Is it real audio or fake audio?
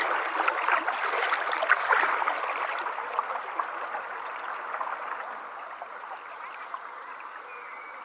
real